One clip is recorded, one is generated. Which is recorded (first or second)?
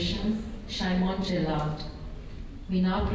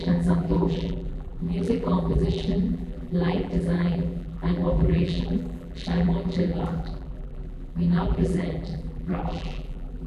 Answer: first